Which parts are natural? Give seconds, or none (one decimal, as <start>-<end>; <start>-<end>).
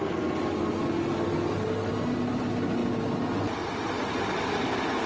0.0-5.1